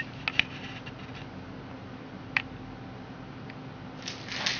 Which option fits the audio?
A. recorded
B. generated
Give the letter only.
A